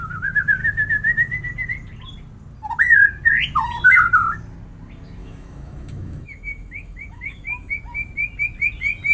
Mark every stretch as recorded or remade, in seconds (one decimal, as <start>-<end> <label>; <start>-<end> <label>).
0.0-5.2 recorded; 5.2-7.7 remade; 7.7-9.1 recorded